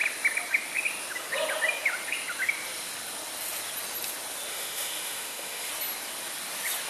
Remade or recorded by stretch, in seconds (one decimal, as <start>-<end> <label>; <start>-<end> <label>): 0.0-4.5 recorded; 4.5-5.7 remade; 5.7-6.9 recorded